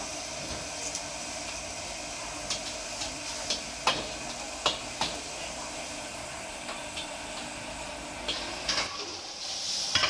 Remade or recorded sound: recorded